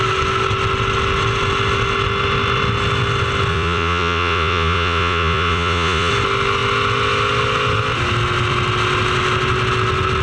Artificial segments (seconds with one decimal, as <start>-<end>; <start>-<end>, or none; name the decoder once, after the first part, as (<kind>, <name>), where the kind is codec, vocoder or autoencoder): 3.5-6.1 (vocoder, Vocos)